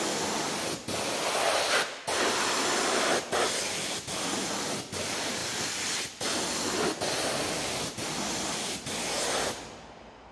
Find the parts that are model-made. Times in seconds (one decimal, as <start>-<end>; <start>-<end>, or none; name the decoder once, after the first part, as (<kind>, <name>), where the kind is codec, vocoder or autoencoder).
5.4-6.0 (vocoder, BigVGAN v2)